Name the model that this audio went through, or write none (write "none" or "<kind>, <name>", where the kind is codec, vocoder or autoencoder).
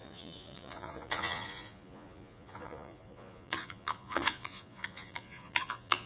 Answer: vocoder, Vocos